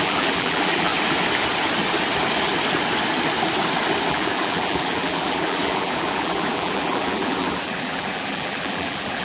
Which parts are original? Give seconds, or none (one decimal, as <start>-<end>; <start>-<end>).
0.9-4.1